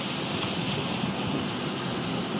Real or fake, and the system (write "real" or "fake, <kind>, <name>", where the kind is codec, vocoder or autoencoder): real